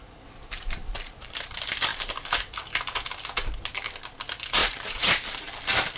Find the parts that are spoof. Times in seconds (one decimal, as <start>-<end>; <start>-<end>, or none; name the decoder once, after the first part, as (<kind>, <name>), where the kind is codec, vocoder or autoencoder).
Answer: 0.0-1.5 (vocoder, BigVGAN v2); 1.9-3.2; 4.6-5.4